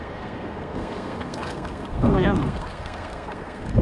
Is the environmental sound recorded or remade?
remade